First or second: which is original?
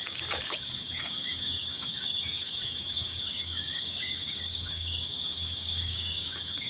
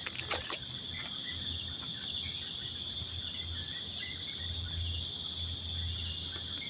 second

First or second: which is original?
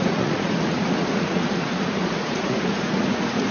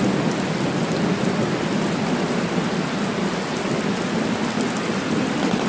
second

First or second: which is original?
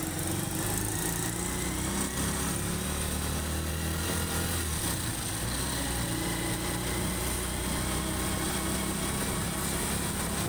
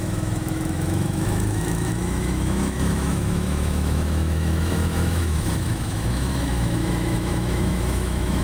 first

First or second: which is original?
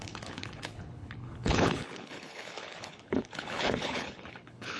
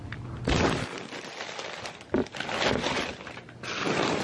second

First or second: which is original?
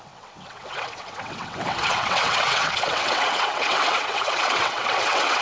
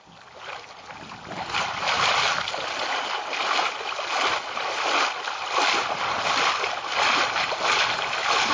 second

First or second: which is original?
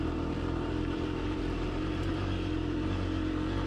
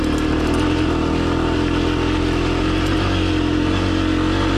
second